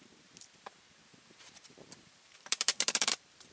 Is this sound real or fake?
fake